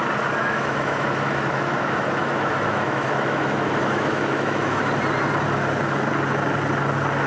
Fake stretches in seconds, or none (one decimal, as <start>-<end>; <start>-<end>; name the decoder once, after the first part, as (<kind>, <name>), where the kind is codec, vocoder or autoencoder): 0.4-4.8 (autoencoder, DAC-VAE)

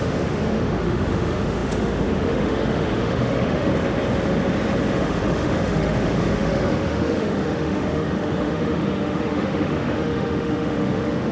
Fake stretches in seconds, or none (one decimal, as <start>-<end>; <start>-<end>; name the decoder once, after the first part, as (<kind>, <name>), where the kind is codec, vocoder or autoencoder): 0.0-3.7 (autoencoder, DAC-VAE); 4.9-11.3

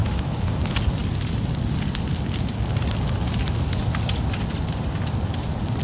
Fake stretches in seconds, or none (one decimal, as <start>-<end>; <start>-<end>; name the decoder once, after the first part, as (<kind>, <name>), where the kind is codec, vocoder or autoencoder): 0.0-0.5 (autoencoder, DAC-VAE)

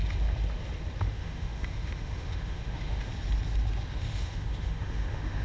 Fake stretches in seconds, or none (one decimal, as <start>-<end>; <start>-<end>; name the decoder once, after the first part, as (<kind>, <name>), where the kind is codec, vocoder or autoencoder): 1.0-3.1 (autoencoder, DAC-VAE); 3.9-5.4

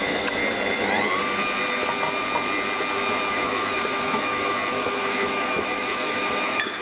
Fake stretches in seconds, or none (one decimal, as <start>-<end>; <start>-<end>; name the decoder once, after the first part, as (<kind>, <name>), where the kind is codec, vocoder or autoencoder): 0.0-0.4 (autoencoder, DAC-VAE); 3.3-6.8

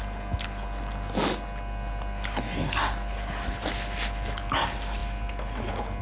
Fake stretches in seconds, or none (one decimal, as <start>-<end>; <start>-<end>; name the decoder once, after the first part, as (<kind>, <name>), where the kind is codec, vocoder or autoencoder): none

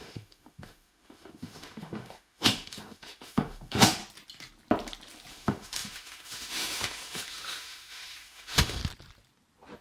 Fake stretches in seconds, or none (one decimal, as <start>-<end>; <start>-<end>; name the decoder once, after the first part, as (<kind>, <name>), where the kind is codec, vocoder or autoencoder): 0.0-4.0 (autoencoder, DAC-VAE); 5.3-8.8

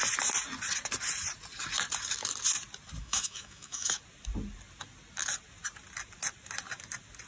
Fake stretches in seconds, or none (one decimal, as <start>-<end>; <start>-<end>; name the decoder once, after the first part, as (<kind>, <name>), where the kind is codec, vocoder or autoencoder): 3.0-4.0 (autoencoder, DAC-VAE)